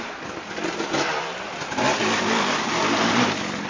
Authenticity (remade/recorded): recorded